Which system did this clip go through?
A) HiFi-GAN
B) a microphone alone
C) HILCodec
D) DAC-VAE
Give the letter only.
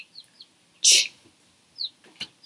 B